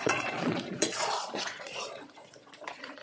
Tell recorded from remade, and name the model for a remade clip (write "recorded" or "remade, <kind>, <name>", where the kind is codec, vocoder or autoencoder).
remade, vocoder, Vocos